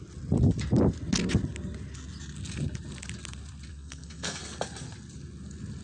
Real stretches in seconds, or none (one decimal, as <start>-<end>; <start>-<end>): 0.0-3.7; 4.4-5.8